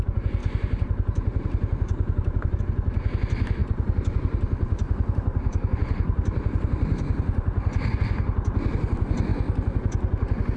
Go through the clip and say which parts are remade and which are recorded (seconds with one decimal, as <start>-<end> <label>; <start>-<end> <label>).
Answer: 0.0-0.4 recorded; 0.4-2.6 remade; 2.6-3.6 recorded; 3.6-8.0 remade; 8.0-10.6 recorded